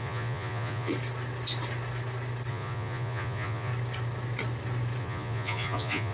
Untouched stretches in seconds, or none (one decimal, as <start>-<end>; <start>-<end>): 0.9-2.5; 3.7-5.0